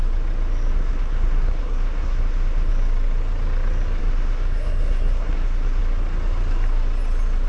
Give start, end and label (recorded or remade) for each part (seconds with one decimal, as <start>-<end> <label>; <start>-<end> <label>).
0.0-0.7 recorded; 0.7-2.7 remade; 2.7-4.0 recorded; 4.0-5.8 remade; 5.8-7.5 recorded